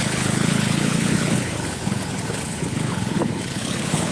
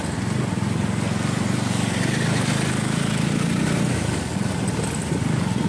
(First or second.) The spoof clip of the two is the first